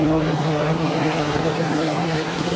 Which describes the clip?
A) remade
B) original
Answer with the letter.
A